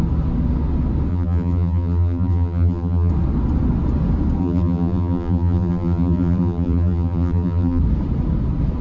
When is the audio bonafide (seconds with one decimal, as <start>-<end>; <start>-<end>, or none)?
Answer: 0.0-1.1; 3.1-4.4; 7.8-8.8